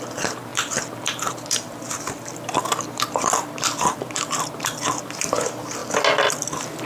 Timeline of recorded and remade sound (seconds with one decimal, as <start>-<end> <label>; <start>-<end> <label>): 0.0-5.8 remade; 5.8-6.3 recorded; 6.3-6.9 remade